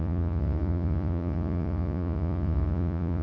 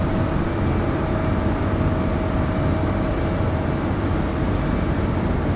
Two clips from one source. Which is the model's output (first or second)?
first